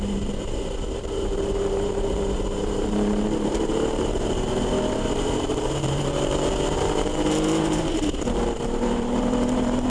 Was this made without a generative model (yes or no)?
no